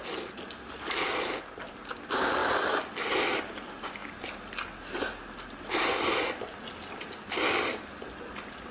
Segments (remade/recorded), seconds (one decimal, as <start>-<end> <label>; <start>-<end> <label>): 0.0-8.7 recorded